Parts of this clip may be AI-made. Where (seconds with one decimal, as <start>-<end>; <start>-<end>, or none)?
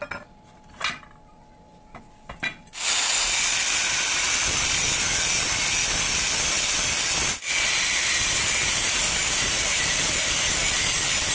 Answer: 8.0-10.8